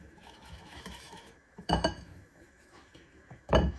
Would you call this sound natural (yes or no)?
no